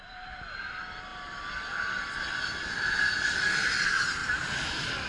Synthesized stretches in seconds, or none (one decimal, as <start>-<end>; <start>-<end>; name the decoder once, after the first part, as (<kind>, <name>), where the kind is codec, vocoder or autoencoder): none